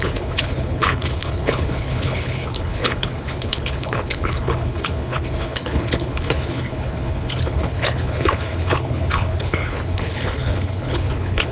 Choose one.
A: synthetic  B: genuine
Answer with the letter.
A